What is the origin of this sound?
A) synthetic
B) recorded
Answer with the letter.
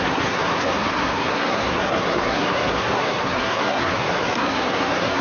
A